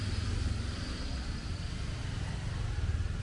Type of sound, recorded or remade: recorded